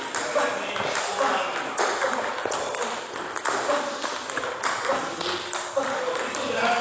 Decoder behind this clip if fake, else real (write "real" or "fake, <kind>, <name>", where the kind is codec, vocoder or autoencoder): real